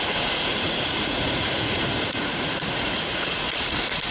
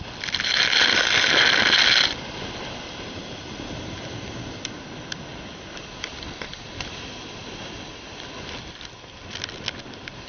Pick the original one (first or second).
second